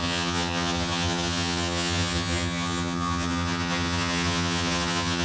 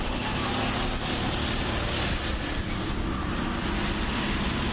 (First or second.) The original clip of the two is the second